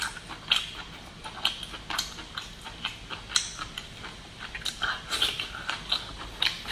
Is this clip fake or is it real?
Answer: real